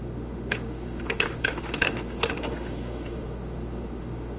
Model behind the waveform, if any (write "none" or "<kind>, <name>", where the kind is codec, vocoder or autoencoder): autoencoder, DAC-VAE